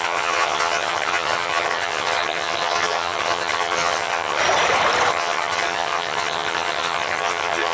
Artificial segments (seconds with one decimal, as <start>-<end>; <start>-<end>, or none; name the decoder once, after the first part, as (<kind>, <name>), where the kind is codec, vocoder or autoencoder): 0.0-4.4 (vocoder, HiFi-GAN); 5.1-7.7